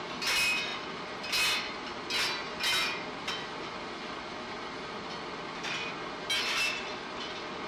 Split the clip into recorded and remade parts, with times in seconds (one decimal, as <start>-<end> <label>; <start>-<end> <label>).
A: 0.0-7.7 recorded